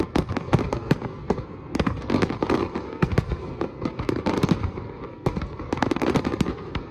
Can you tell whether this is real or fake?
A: fake